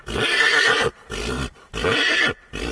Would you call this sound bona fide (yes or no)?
yes